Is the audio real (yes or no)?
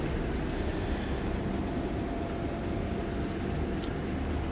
yes